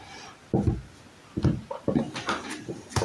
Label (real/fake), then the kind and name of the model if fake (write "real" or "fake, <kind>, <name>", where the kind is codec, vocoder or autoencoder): real